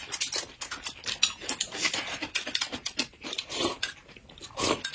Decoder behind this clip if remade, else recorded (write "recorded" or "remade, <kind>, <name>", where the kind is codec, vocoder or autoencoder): remade, vocoder, BigVGAN v2